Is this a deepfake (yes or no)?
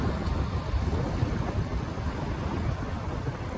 no